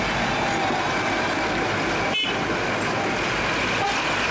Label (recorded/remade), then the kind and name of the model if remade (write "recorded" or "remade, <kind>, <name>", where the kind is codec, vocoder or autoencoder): recorded